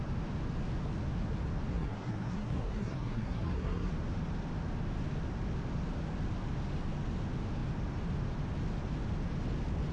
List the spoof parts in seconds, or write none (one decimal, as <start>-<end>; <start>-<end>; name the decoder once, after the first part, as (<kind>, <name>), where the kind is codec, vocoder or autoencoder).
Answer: 1.7-3.9 (codec, SNAC)